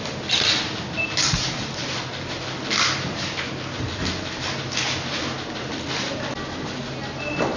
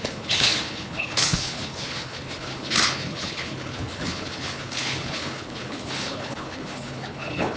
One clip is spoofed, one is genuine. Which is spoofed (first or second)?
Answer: second